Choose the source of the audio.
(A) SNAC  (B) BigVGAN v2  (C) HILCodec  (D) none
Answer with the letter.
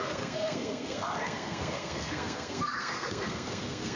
A